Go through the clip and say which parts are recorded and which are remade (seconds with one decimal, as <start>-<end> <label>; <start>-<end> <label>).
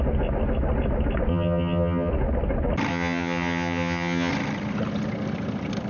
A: 0.0-1.3 recorded; 1.3-2.1 remade; 2.1-2.9 recorded; 2.9-4.3 remade; 4.3-5.9 recorded